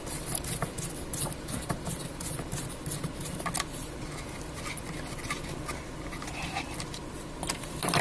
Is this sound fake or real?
real